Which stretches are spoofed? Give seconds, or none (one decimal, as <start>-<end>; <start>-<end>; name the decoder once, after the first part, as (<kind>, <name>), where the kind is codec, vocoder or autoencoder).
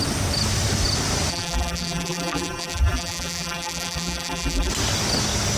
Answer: 1.3-4.7 (vocoder, BigVGAN v2)